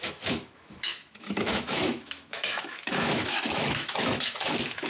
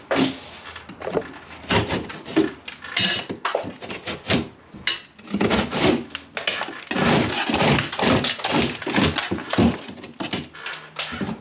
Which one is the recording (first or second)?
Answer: second